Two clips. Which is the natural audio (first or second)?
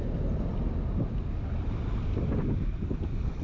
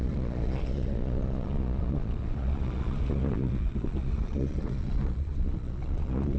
first